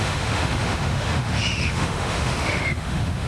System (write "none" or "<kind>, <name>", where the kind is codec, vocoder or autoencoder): autoencoder, DAC-VAE